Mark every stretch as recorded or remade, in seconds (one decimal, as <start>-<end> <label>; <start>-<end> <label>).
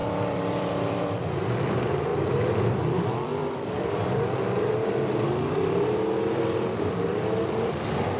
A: 0.0-8.2 remade